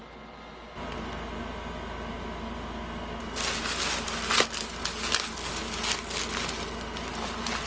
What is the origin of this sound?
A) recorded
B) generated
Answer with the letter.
A